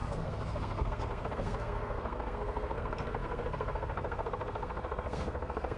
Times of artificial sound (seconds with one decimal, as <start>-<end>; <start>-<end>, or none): 0.0-5.8